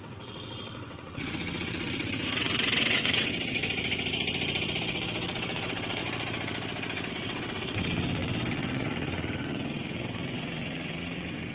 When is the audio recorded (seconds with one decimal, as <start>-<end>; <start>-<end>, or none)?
3.6-4.8; 6.0-7.1